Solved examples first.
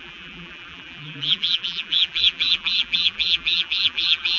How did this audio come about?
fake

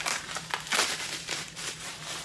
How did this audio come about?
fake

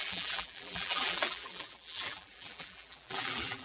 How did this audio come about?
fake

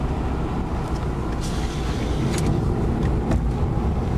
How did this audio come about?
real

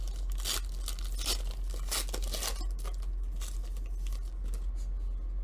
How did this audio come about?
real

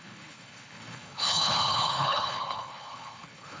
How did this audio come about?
fake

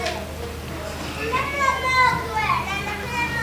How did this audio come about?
real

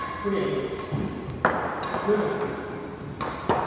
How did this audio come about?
real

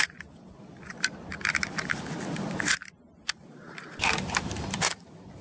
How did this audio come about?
real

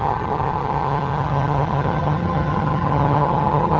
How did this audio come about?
fake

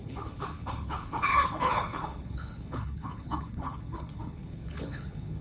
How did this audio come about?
fake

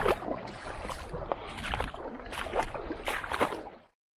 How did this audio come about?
real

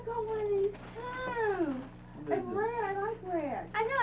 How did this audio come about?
real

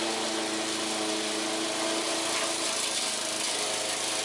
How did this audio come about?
real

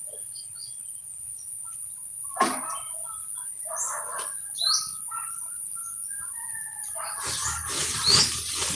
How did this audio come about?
real